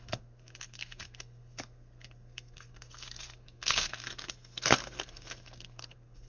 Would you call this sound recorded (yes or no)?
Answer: no